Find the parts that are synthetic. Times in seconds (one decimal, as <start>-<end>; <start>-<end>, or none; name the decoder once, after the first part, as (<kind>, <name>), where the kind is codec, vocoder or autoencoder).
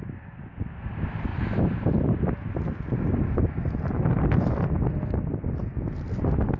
none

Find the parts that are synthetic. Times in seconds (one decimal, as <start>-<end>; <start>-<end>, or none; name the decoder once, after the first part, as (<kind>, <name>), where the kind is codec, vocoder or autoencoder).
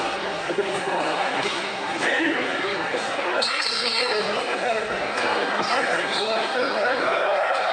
0.0-7.7 (codec, SNAC)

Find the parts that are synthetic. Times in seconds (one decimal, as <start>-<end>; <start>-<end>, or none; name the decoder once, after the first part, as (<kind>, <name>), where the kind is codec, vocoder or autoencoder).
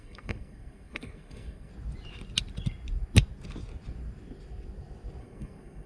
0.0-1.7 (codec, SNAC); 5.2-5.9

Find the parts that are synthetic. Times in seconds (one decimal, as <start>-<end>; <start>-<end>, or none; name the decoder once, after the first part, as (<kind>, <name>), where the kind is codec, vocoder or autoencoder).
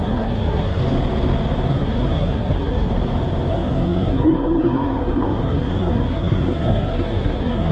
0.0-0.8 (codec, SNAC); 1.7-2.9; 3.5-7.7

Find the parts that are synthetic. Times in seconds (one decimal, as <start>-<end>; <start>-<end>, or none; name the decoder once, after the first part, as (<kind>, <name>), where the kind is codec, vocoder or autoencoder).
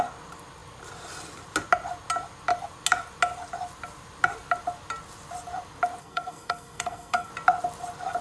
6.0-7.3 (codec, SNAC)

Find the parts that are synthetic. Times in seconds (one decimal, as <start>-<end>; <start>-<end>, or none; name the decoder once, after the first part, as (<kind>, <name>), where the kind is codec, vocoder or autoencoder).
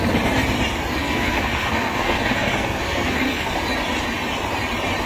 1.0-3.5 (codec, SNAC)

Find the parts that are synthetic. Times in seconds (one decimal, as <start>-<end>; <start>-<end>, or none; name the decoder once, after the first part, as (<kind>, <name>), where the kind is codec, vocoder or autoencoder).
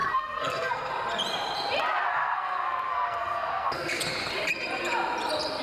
0.0-0.9 (codec, SNAC); 2.1-4.0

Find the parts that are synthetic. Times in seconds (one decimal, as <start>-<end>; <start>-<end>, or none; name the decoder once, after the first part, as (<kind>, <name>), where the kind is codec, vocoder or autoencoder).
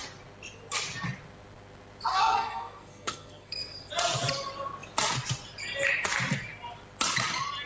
2.1-3.9 (codec, SNAC)